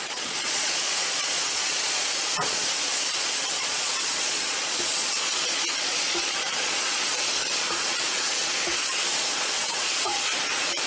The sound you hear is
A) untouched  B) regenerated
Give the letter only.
B